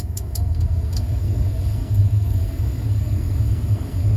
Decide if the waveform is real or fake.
fake